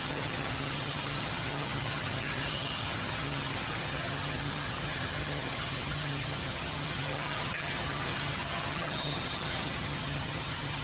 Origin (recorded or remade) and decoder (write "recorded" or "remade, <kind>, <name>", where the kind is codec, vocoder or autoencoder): remade, vocoder, HiFi-GAN